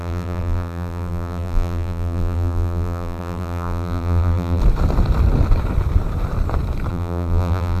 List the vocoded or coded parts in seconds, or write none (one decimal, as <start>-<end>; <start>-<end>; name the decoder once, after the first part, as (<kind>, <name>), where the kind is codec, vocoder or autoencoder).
0.0-4.6 (vocoder, BigVGAN v2); 6.9-7.8